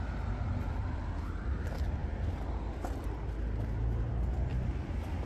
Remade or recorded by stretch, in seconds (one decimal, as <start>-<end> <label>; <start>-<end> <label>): 0.0-4.5 recorded; 4.5-5.3 remade